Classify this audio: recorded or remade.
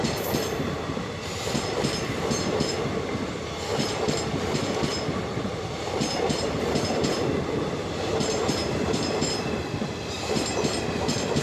remade